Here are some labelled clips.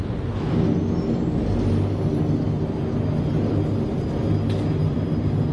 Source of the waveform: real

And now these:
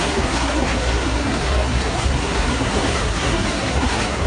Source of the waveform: fake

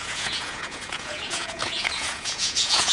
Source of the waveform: fake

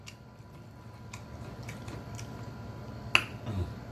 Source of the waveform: real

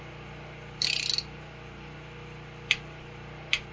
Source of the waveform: real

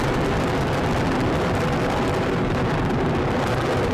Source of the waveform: fake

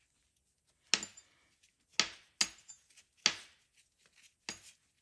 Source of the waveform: real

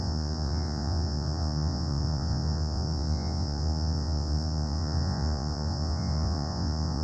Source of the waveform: fake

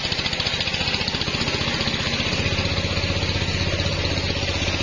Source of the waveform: real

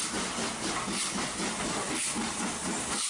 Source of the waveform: real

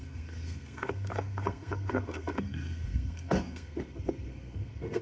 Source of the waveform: fake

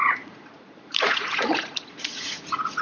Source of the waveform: fake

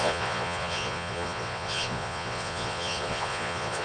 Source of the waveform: fake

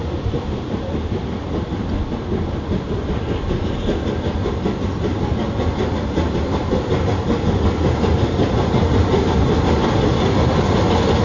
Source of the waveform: real